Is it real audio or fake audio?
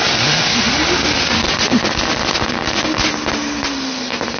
real